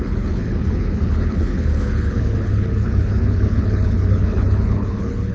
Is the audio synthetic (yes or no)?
yes